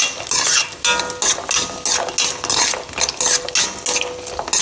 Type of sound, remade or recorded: recorded